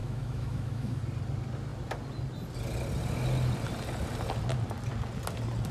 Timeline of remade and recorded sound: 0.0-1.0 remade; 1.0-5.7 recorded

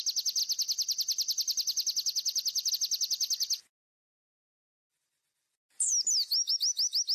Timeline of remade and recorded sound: 0.0-7.1 recorded

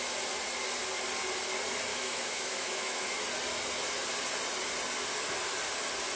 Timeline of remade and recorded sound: 0.0-1.9 recorded; 1.9-3.2 remade; 3.2-6.2 recorded

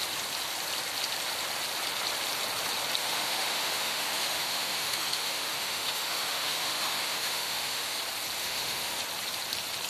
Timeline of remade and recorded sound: 0.0-3.0 recorded; 3.0-8.0 remade; 8.0-8.4 recorded; 8.4-9.0 remade; 9.0-9.9 recorded